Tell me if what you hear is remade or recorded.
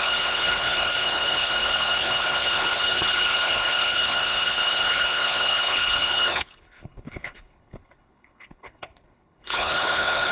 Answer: remade